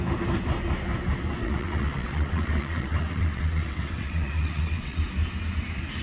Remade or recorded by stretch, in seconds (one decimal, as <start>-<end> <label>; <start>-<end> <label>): 0.0-1.4 recorded; 1.4-5.0 remade; 5.0-6.0 recorded